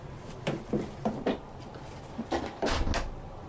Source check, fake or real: real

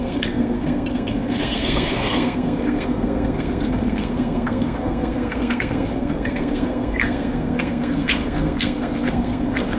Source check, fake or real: fake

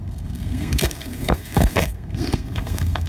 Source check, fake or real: fake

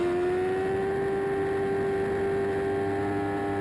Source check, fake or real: real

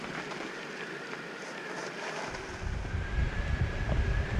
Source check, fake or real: fake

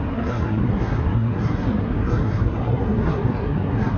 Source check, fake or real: fake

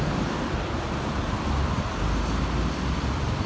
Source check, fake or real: real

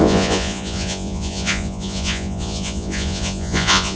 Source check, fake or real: fake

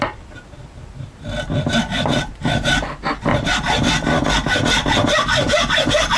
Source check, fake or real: real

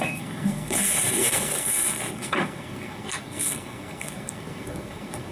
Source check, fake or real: fake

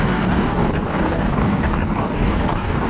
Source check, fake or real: fake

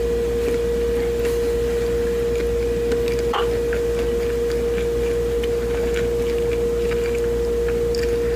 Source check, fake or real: real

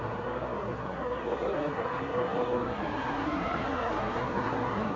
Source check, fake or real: fake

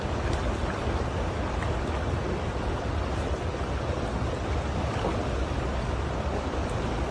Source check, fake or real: real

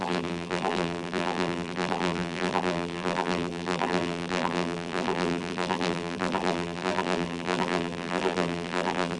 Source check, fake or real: fake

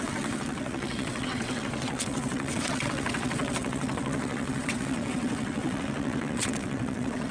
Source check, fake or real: fake